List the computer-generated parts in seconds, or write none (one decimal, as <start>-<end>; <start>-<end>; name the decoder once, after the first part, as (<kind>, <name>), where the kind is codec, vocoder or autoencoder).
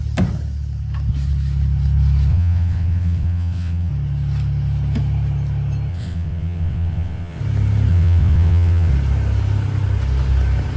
2.3-3.9 (vocoder, WaveNeXt); 5.9-7.4; 7.9-8.9